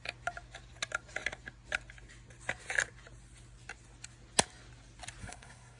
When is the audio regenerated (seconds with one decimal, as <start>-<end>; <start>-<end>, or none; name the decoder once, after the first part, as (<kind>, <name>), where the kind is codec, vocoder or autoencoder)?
5.2-5.8 (codec, SNAC)